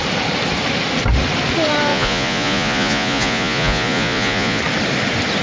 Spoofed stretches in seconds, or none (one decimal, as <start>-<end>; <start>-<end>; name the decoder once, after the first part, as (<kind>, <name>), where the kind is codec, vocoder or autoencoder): 1.9-4.6 (vocoder, Vocos)